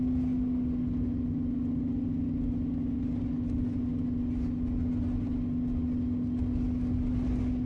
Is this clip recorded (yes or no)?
yes